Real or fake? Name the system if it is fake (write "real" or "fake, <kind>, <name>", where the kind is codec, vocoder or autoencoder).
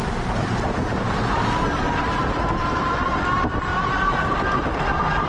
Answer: fake, vocoder, BigVGAN v2